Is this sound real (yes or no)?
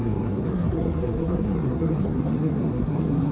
no